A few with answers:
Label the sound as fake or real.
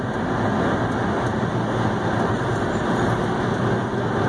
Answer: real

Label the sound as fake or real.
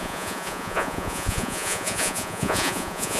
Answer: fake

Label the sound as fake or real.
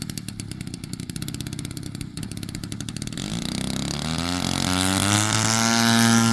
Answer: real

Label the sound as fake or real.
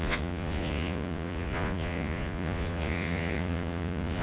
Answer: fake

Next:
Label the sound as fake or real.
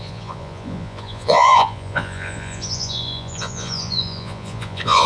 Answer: fake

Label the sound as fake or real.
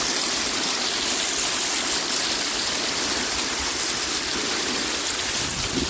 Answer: real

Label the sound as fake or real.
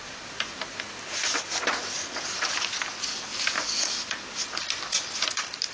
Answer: real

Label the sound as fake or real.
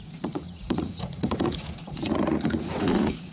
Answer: fake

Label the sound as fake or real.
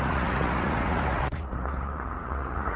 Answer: fake